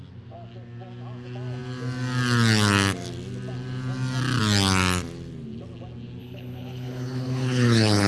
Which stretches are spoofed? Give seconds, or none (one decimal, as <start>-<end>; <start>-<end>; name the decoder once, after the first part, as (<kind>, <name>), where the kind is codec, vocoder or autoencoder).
6.2-8.1 (codec, HILCodec)

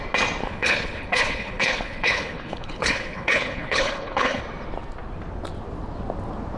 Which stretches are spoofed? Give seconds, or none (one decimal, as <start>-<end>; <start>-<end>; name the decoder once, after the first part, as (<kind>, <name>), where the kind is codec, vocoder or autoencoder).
0.4-4.4 (codec, HILCodec)

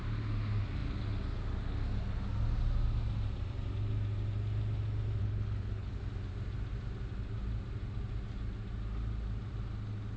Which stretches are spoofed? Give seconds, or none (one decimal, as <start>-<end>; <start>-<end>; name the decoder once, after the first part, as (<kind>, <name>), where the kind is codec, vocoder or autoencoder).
5.2-6.0 (codec, HILCodec)

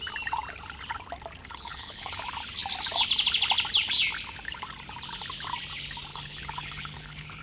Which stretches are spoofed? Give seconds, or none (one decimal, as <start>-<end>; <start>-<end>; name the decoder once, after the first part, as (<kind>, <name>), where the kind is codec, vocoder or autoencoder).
1.4-2.2 (codec, HILCodec); 6.1-7.4

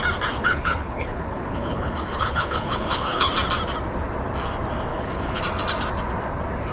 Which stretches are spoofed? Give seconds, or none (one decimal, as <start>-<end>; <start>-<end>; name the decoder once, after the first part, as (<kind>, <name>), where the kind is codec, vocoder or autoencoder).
0.4-3.3 (codec, HILCodec); 4.9-5.4